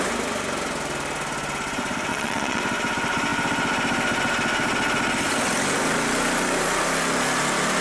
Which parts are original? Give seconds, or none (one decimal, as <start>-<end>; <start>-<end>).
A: 0.0-2.1; 2.6-7.8